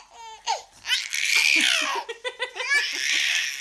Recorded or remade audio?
recorded